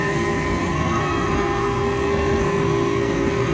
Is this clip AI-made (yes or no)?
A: yes